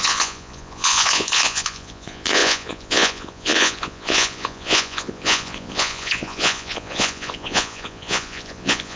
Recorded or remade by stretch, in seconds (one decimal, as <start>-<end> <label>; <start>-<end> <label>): 0.0-9.0 remade